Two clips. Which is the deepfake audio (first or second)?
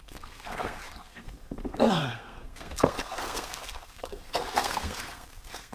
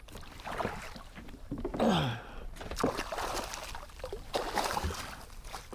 first